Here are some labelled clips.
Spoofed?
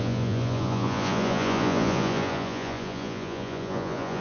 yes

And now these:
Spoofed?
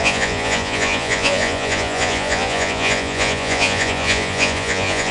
yes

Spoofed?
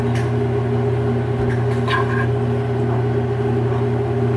no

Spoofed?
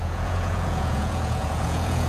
yes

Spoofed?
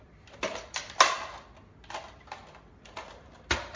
no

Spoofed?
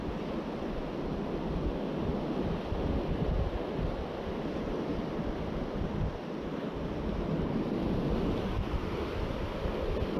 no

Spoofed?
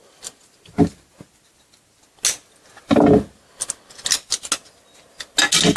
no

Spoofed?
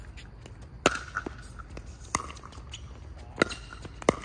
no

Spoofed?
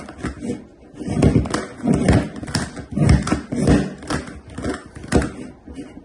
no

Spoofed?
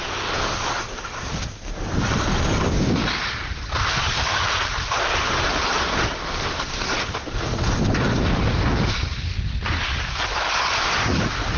no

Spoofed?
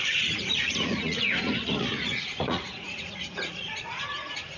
yes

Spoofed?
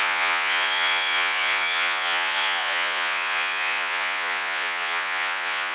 yes